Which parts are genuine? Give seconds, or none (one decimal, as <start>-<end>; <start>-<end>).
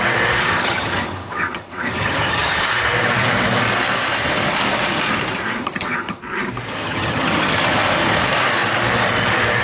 0.0-0.5; 2.6-5.6; 6.2-6.8; 7.8-9.6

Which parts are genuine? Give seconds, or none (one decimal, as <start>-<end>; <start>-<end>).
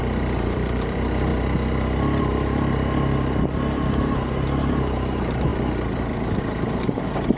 1.3-2.2; 5.5-6.4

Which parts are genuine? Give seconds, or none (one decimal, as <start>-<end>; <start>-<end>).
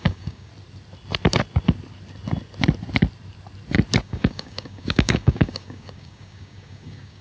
0.5-4.0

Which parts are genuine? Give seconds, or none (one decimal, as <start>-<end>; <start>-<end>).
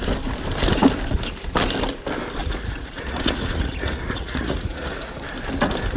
0.0-2.4; 5.1-6.0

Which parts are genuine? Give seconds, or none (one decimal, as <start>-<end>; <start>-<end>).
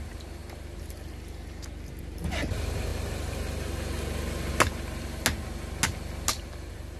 0.0-7.0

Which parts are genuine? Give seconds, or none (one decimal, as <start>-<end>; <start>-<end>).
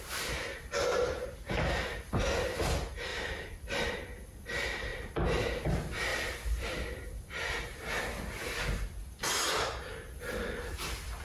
0.0-3.1; 3.9-6.1; 8.0-11.2